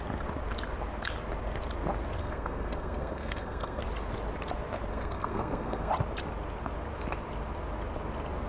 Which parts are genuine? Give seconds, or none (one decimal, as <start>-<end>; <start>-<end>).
0.0-2.2; 3.8-4.9; 5.9-8.5